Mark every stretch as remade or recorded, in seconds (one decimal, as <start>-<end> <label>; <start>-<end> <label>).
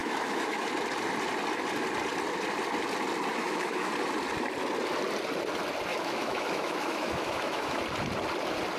0.0-0.7 remade; 0.7-3.3 recorded; 3.3-3.9 remade; 3.9-5.9 recorded; 5.9-7.8 remade; 7.8-8.8 recorded